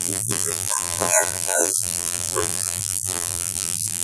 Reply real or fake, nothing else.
fake